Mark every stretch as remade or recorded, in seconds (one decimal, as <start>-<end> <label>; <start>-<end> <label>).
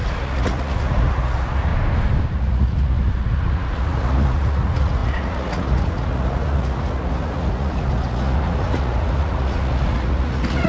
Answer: 0.0-1.7 remade; 1.7-2.3 recorded; 2.3-10.7 remade